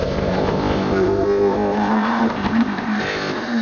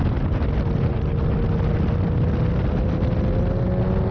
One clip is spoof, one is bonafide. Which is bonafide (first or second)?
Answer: second